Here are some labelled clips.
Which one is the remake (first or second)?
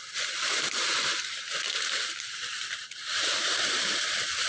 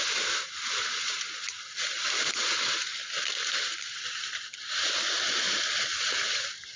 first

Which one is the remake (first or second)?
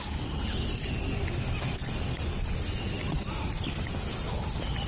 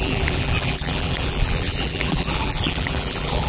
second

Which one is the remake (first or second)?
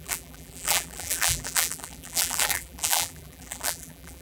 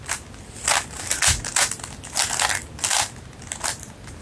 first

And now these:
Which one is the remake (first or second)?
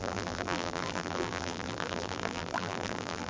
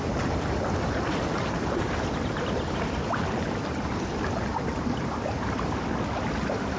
first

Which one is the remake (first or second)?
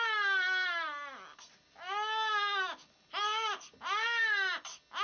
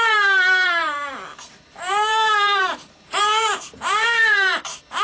second